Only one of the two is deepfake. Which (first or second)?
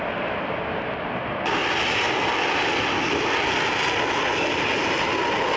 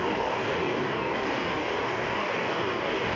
second